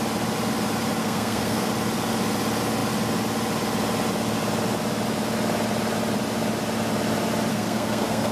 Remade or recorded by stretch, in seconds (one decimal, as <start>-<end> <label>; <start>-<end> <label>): 0.0-1.0 recorded; 1.0-1.7 remade; 1.7-7.5 recorded; 7.5-8.3 remade